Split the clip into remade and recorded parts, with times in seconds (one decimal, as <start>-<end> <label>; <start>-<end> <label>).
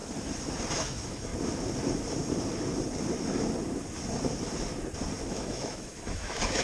0.0-0.7 recorded; 0.7-1.3 remade; 1.3-5.3 recorded; 5.3-6.6 remade